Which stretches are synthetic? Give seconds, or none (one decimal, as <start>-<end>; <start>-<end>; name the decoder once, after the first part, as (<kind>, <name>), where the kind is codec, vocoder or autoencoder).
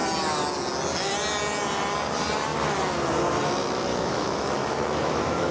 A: 3.9-5.5 (autoencoder, DAC-VAE)